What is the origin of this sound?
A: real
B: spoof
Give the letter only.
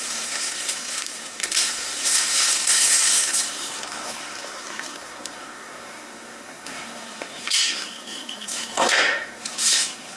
B